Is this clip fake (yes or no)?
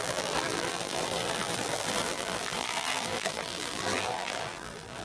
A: yes